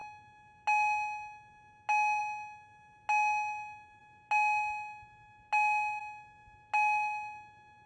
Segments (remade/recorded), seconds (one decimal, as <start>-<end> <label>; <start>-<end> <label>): 0.0-7.9 recorded